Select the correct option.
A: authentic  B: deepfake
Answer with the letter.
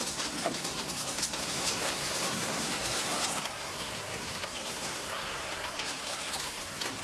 B